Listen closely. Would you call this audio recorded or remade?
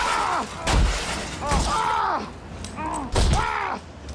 recorded